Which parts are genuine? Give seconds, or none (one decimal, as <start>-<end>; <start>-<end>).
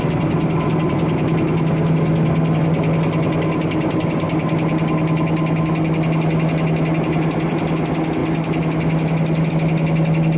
0.0-10.4